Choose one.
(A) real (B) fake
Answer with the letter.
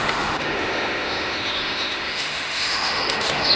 B